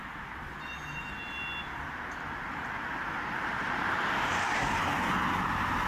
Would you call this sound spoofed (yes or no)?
no